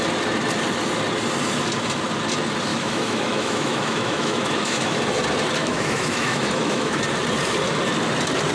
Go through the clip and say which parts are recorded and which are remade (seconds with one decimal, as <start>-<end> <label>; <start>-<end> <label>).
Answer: 0.0-2.7 recorded; 2.7-5.0 remade; 5.0-5.6 recorded; 5.6-7.0 remade; 7.0-8.5 recorded